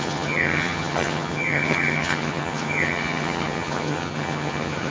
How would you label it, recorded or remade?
remade